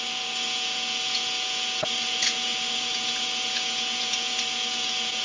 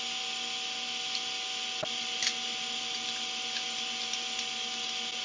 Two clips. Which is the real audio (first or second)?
second